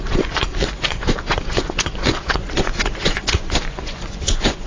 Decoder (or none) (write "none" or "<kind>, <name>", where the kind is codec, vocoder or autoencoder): vocoder, Vocos